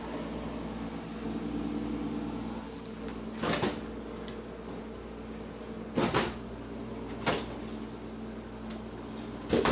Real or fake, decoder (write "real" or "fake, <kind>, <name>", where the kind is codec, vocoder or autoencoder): real